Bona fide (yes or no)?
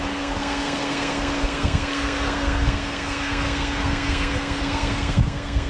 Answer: no